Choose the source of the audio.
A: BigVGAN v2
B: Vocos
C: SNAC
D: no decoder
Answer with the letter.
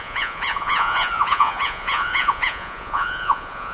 B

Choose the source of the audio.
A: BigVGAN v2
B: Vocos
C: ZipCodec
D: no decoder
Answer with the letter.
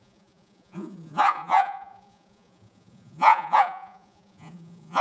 B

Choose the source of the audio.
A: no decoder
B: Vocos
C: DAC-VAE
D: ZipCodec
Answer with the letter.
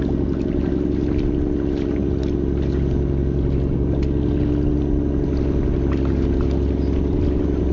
A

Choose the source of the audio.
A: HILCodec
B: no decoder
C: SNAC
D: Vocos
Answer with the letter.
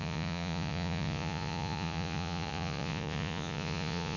D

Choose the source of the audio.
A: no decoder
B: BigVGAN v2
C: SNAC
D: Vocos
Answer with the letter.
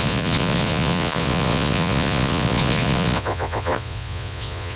D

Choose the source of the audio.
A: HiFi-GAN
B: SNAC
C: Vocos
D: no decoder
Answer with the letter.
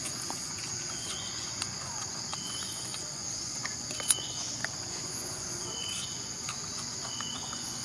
C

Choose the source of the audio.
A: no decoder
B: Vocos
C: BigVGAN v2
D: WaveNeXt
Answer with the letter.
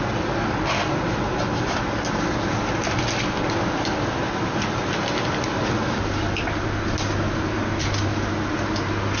A